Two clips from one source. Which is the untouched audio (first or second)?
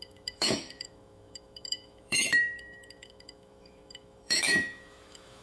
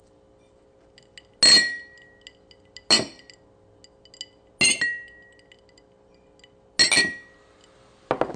second